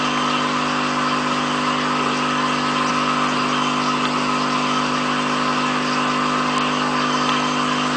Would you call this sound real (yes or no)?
yes